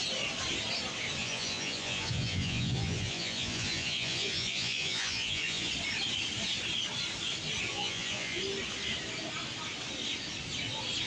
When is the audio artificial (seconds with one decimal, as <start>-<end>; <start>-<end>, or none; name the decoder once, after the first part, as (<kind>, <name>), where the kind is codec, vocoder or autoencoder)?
1.2-5.7 (vocoder, Vocos); 7.7-8.4